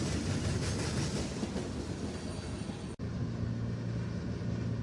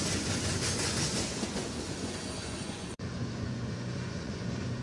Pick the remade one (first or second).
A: second